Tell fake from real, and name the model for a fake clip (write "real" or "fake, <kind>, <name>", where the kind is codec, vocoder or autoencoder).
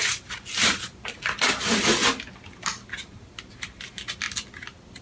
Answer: real